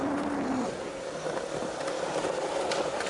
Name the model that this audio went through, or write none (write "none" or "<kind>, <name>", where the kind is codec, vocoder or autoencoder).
vocoder, BigVGAN v2